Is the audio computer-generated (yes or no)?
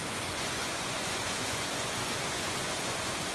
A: yes